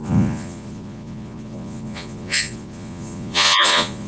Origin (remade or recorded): remade